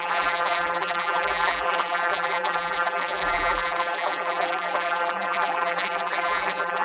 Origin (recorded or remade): remade